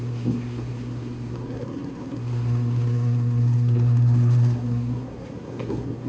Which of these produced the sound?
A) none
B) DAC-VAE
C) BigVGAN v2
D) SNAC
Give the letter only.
D